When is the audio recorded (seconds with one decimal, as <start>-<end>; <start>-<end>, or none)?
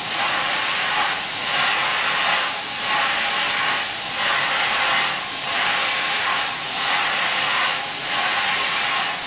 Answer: 1.9-6.0